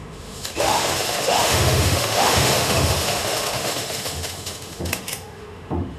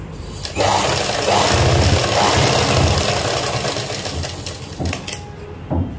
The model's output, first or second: first